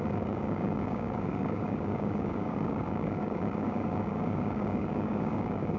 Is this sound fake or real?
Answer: fake